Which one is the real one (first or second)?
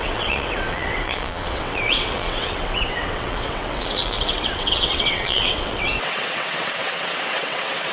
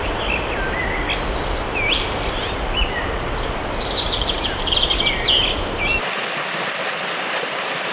second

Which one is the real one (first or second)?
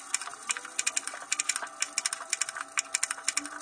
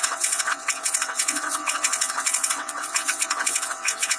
first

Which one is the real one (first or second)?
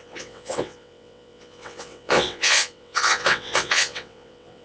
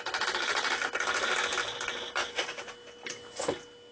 second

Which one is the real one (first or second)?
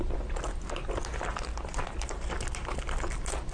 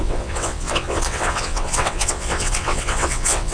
first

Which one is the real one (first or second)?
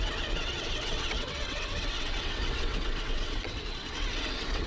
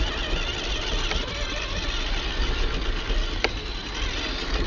second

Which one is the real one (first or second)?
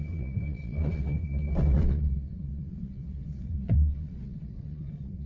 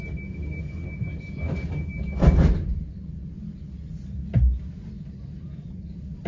second